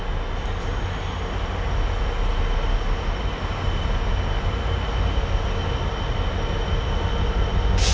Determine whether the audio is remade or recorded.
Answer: recorded